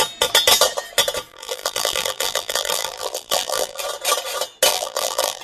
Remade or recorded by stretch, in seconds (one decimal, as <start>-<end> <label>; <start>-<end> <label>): 0.0-1.3 recorded; 1.3-3.8 remade; 3.8-4.7 recorded; 4.7-5.4 remade